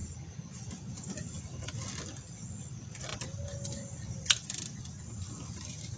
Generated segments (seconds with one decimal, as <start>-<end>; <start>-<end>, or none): none